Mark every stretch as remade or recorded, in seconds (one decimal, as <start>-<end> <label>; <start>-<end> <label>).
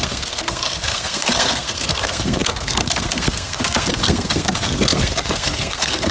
0.0-6.1 remade